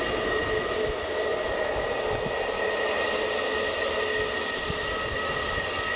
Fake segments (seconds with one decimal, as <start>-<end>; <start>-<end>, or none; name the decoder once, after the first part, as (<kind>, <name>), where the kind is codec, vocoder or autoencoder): none